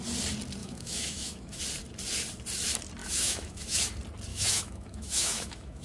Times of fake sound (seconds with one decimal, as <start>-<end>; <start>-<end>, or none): 0.6-1.6; 3.0-3.8; 4.3-5.8